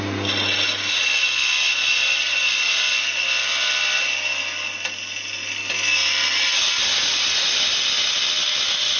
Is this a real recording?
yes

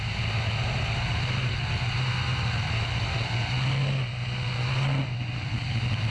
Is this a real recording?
yes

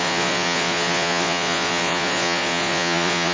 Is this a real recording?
no